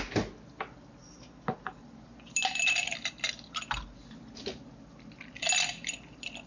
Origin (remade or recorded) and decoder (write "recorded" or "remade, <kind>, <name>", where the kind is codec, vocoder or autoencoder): recorded